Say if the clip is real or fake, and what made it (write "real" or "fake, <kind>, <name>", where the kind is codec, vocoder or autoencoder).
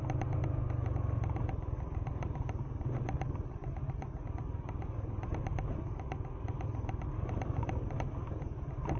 real